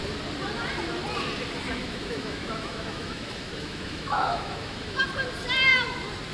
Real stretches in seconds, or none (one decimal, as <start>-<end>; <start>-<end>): 0.0-1.8; 5.1-6.3